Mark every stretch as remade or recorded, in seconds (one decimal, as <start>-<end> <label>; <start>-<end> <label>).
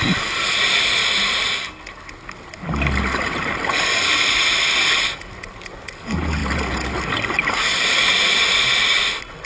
0.0-9.5 recorded